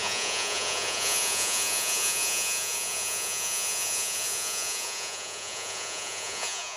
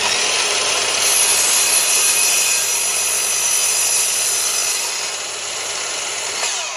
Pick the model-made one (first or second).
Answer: first